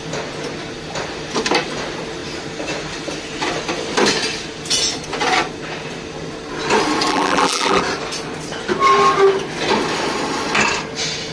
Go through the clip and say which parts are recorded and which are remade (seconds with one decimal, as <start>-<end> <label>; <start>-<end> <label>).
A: 0.0-7.1 recorded; 7.1-7.8 remade; 7.8-11.3 recorded